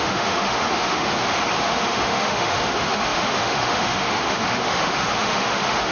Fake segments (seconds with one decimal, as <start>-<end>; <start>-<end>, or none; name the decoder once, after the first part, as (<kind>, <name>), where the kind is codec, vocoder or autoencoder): 0.0-1.1 (autoencoder, DAC-VAE); 1.6-5.9